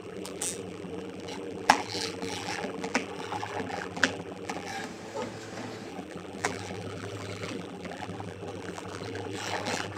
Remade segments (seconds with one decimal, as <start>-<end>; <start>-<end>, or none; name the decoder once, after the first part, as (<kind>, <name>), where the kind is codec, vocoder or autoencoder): 0.0-4.7 (vocoder, BigVGAN v2); 5.9-10.0